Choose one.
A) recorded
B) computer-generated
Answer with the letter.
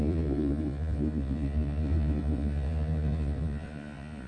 B